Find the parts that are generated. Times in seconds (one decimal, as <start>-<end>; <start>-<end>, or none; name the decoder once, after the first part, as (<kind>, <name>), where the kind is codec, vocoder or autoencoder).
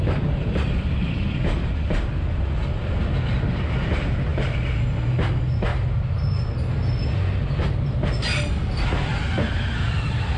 none